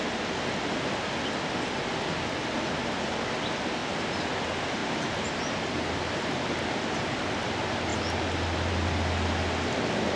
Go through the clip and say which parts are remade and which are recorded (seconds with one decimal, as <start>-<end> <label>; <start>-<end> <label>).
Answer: 0.0-3.8 recorded; 3.8-4.3 remade; 4.3-4.8 recorded; 4.8-5.5 remade; 5.5-10.2 recorded